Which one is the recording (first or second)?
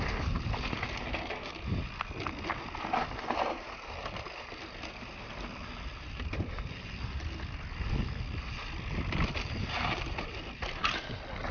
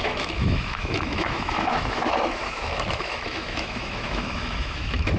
first